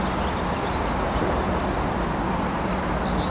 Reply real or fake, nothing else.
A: real